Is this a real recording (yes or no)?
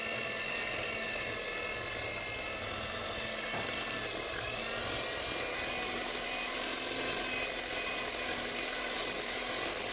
yes